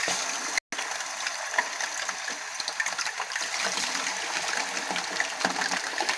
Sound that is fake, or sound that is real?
real